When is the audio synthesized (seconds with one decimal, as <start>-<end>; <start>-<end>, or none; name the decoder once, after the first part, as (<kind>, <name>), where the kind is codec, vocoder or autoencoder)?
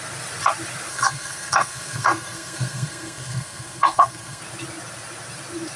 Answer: 0.9-4.4 (codec, SNAC)